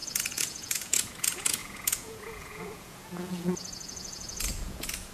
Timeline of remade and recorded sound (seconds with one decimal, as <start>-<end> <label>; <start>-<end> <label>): 0.0-5.1 remade